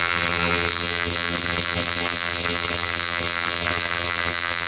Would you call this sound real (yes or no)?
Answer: no